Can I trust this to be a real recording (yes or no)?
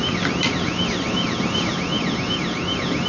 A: yes